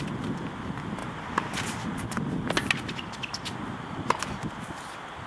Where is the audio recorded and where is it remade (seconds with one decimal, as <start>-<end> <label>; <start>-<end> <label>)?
0.0-5.3 recorded